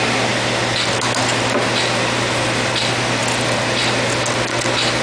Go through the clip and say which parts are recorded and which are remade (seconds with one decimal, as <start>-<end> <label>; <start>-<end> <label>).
0.0-5.0 recorded